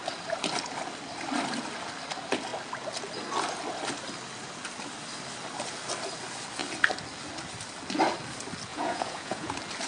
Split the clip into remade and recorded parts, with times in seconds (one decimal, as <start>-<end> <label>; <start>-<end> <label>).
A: 0.0-8.7 recorded; 8.7-9.5 remade; 9.5-9.9 recorded